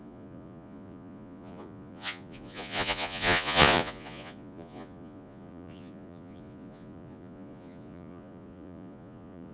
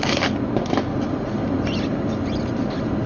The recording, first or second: second